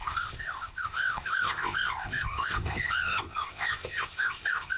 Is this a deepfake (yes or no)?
yes